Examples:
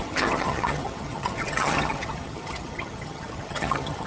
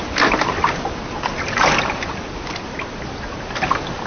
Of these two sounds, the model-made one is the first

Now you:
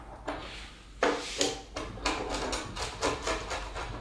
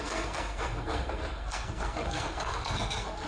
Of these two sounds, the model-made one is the second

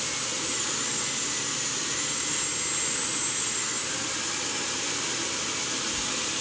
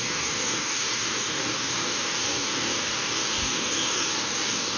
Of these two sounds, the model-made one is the second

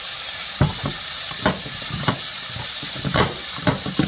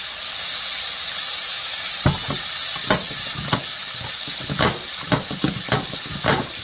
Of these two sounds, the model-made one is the first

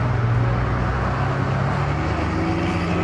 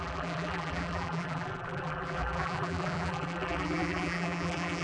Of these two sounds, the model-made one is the second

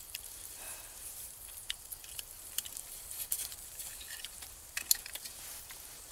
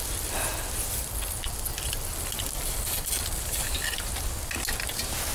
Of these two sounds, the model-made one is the first